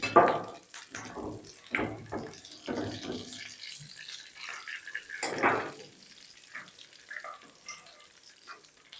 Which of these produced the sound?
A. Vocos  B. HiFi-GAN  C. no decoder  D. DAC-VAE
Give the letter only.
C